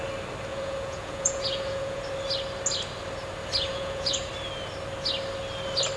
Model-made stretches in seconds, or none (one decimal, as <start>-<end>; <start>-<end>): 0.5-2.0; 3.7-4.3